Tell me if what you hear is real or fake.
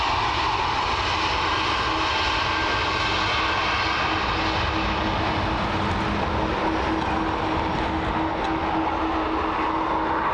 real